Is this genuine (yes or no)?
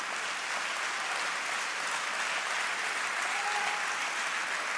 yes